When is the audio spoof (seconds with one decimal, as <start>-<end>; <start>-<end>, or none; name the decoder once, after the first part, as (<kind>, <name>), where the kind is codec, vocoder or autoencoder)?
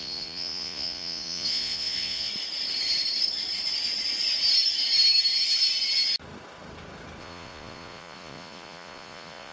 0.0-2.3 (vocoder, Vocos); 7.2-9.5